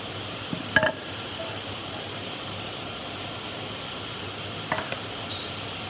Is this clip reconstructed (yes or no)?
no